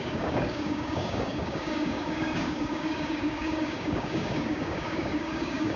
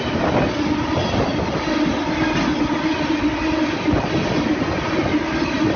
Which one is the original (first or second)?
second